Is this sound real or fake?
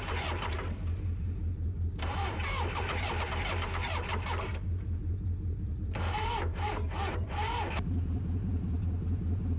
fake